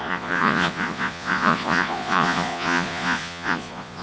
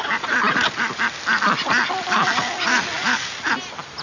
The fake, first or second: first